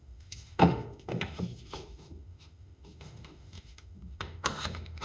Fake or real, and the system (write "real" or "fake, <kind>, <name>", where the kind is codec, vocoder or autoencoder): fake, autoencoder, DAC-VAE